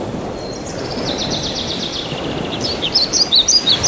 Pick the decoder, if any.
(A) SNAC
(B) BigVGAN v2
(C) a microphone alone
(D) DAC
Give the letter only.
B